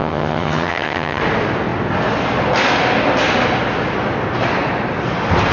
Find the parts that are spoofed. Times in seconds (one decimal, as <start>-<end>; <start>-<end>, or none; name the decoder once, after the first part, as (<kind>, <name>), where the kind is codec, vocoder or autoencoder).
0.0-1.2 (vocoder, HiFi-GAN)